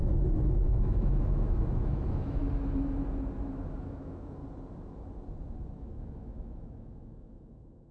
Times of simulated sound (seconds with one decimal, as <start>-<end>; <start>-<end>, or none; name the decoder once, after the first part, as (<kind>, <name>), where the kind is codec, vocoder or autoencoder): 0.0-2.4 (autoencoder, DAC-VAE); 3.8-4.4; 5.7-7.9